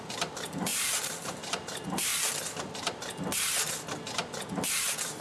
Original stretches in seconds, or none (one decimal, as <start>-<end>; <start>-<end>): 2.1-5.2